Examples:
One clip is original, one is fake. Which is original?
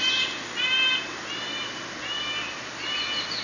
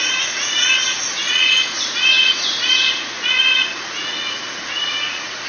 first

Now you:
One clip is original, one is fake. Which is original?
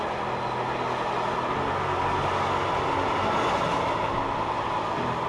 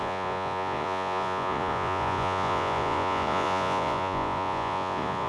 first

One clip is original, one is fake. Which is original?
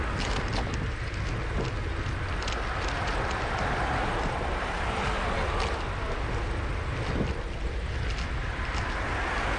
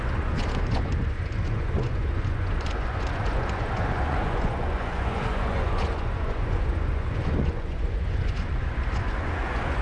first